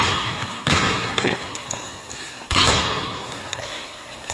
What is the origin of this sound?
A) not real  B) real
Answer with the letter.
A